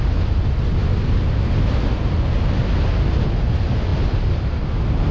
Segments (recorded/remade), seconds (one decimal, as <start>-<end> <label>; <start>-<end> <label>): 0.0-5.1 recorded